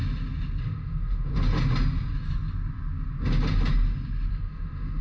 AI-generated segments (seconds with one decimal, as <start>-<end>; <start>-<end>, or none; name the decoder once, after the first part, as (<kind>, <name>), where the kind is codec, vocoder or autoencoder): 0.6-1.3 (autoencoder, DAC-VAE); 4.3-5.0